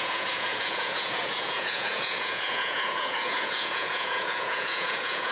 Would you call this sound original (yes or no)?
no